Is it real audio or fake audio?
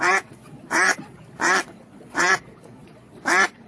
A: fake